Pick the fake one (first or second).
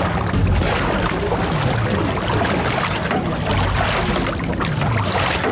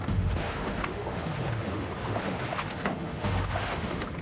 second